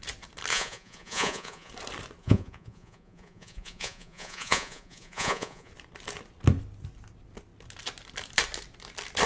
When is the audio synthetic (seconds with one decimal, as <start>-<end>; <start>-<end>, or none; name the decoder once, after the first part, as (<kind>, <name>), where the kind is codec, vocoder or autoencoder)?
0.5-1.7 (vocoder, Vocos); 2.2-5.7